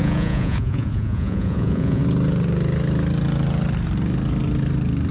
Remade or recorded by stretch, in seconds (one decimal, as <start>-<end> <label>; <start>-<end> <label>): 0.0-2.0 remade; 2.0-5.1 recorded